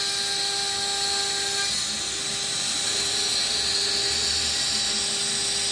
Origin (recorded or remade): recorded